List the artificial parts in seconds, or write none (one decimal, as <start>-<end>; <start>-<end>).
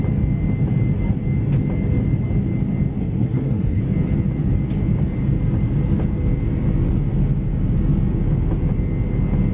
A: 3.0-3.8